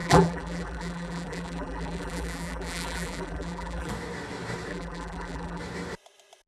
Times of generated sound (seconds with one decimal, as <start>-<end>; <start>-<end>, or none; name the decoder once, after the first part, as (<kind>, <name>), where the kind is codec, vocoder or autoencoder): 0.0-3.9 (vocoder, BigVGAN v2); 4.7-5.6